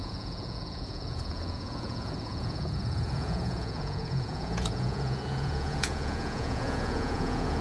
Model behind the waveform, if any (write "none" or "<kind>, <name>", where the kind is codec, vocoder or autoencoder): vocoder, Vocos